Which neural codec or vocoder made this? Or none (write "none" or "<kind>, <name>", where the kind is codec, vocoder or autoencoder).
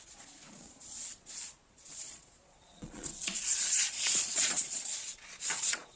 vocoder, Vocos